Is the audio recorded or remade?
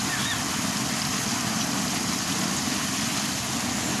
recorded